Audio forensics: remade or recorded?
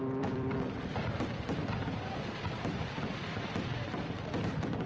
remade